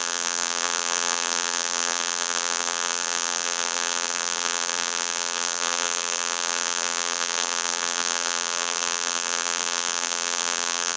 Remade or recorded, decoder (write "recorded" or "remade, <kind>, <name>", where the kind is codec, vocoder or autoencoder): remade, vocoder, BigVGAN v2